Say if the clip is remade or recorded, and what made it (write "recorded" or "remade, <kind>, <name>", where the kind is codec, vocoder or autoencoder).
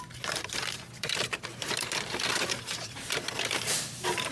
remade, vocoder, BigVGAN v2